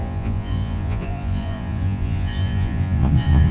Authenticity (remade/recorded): remade